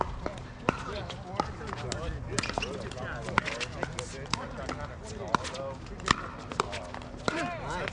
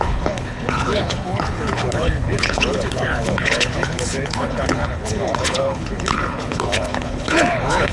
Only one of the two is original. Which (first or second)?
first